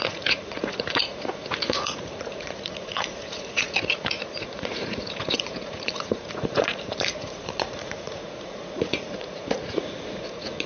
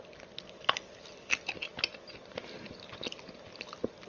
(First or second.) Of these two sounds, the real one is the second